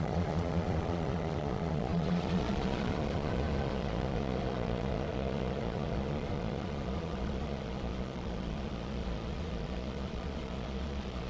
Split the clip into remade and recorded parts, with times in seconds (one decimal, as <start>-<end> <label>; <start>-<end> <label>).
0.0-11.3 remade